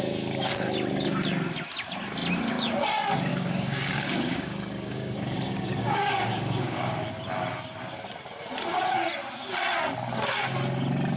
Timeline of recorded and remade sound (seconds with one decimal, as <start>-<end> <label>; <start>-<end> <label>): 0.0-3.3 recorded; 3.3-7.1 remade; 7.1-11.2 recorded